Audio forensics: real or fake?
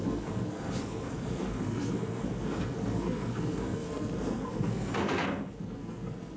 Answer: fake